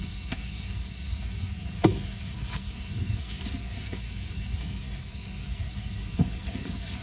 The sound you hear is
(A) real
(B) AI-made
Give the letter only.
B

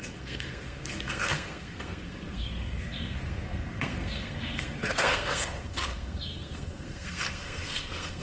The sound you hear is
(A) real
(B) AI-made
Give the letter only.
B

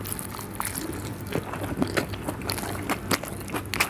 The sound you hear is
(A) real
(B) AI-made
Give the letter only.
A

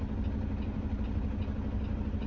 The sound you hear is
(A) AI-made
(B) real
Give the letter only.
B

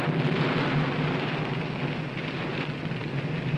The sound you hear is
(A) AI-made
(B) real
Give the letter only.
B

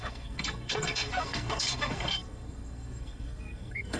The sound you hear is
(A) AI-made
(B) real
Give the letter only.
A